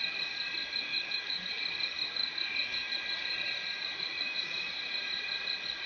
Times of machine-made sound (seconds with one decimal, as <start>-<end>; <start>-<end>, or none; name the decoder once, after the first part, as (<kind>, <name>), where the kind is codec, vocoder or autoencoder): 0.9-1.5 (autoencoder, DAC-VAE)